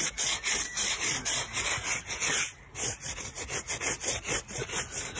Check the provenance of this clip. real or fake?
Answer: real